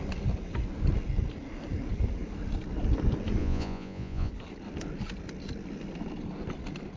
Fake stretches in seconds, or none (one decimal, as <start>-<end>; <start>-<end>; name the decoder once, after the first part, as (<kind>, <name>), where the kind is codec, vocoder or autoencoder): 3.4-4.3 (vocoder, Vocos)